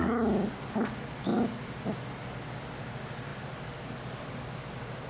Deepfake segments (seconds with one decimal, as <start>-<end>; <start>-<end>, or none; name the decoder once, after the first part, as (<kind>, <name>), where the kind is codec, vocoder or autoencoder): none